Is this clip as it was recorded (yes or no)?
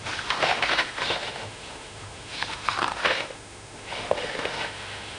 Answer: no